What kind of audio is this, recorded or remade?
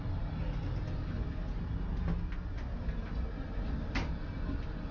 recorded